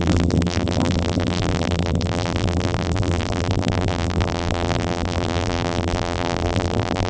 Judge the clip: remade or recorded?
remade